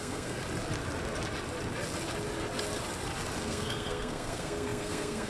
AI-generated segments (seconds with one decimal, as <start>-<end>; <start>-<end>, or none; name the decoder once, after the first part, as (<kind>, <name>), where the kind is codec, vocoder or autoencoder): 0.0-0.4 (codec, SNAC); 3.4-5.3